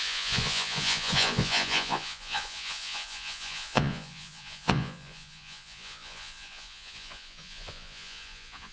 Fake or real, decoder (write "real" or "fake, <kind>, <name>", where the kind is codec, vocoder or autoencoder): fake, vocoder, Vocos